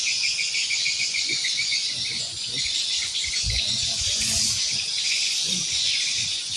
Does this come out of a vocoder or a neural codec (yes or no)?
yes